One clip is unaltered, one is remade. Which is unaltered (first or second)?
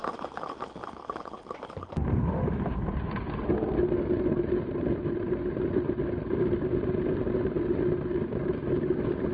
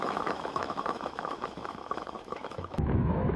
first